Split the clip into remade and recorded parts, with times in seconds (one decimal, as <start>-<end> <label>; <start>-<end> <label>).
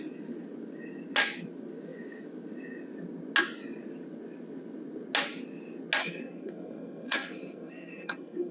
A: 0.0-6.0 recorded; 6.0-8.5 remade